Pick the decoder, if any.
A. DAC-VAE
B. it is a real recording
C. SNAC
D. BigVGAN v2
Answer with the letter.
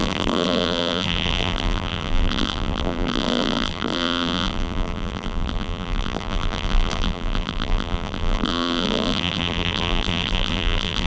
D